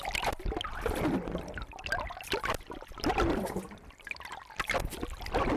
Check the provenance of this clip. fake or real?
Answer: real